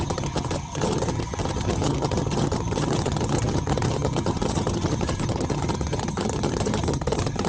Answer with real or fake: fake